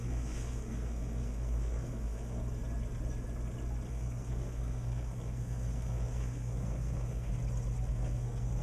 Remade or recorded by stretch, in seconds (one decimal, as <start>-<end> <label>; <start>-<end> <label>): 0.0-2.4 remade; 2.4-3.9 recorded; 3.9-7.3 remade; 7.3-7.9 recorded; 7.9-8.6 remade